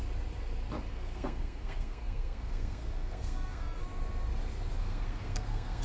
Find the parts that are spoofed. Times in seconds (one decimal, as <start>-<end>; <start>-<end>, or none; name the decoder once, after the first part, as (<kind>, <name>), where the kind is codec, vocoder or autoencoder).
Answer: 0.9-3.8 (codec, SNAC); 4.8-5.8